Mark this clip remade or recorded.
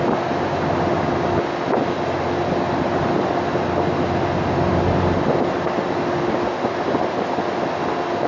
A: recorded